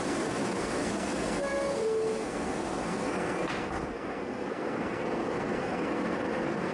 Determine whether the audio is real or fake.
fake